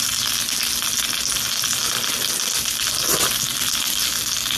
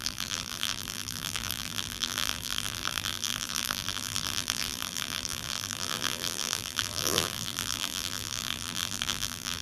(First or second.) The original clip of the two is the first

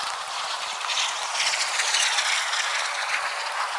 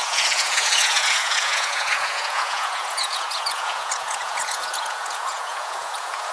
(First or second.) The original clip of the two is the first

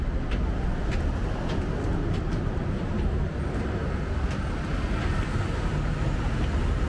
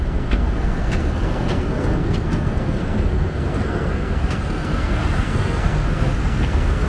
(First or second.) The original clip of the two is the first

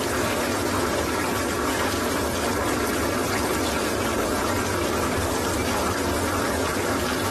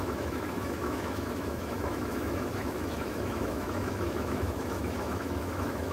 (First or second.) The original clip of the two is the first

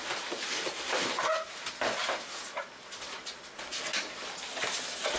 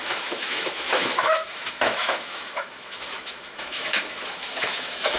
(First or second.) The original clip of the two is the first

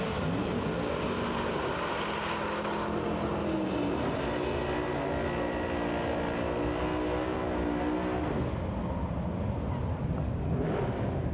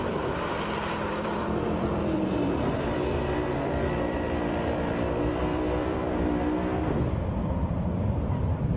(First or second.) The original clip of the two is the first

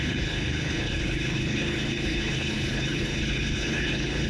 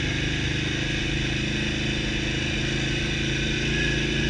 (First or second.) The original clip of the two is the second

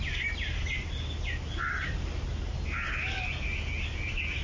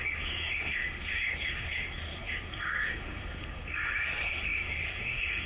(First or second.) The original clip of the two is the first